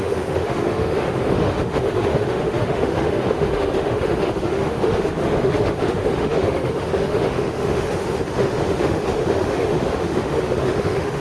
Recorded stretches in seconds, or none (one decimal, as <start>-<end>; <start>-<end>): none

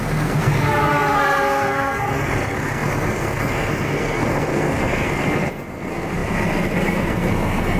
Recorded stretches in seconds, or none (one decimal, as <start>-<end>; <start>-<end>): none